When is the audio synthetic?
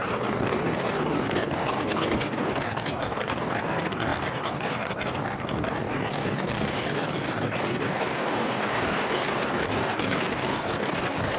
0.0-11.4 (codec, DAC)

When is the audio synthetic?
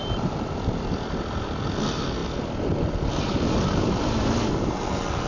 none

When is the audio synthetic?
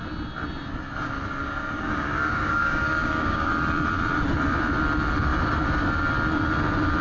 1.4-3.5 (codec, DAC)